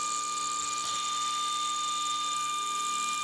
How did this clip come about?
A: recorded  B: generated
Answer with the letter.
A